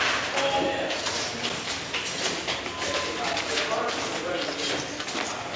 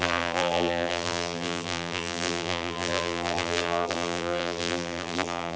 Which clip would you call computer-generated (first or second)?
second